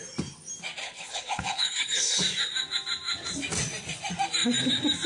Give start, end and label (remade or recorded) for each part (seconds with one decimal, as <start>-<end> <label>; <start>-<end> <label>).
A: 0.0-0.8 recorded; 0.8-2.2 remade; 2.2-5.1 recorded